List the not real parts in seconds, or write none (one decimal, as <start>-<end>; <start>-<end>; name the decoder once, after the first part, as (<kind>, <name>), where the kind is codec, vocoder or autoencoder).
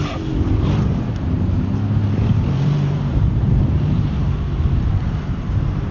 2.0-5.5 (vocoder, BigVGAN v2)